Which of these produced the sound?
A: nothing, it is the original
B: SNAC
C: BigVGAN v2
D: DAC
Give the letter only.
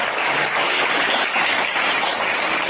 D